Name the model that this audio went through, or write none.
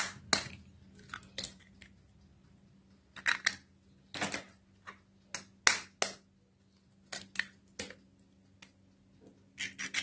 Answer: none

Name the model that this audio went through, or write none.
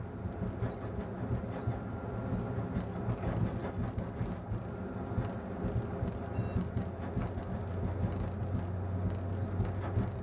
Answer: none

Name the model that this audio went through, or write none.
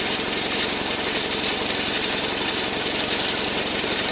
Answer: vocoder, BigVGAN v2